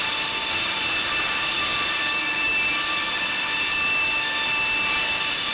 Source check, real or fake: fake